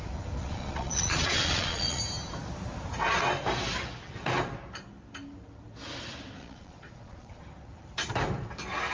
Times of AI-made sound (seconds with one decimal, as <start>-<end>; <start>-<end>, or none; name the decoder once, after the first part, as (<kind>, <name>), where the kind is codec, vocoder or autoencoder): 0.4-2.0 (vocoder, Vocos); 6.4-7.4